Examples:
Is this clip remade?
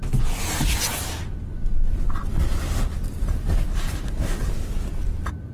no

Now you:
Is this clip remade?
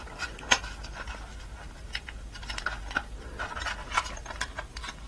yes